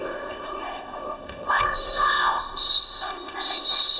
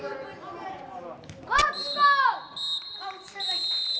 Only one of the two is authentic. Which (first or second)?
second